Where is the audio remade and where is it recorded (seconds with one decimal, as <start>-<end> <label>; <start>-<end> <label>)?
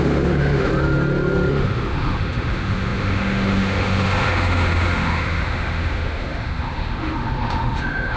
0.0-0.7 remade; 0.7-1.5 recorded; 1.5-8.2 remade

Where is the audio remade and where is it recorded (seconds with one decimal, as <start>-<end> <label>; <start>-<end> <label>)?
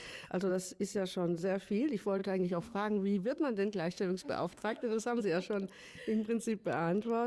0.0-2.2 recorded; 2.2-5.2 remade; 5.2-7.3 recorded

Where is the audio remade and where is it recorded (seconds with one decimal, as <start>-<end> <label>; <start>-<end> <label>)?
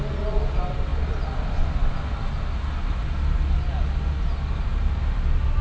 0.0-5.6 recorded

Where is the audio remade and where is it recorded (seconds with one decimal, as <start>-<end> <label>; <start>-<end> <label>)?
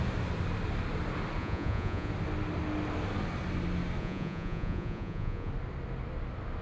0.0-1.4 recorded; 1.4-2.1 remade; 2.1-4.0 recorded; 4.0-5.5 remade; 5.5-6.6 recorded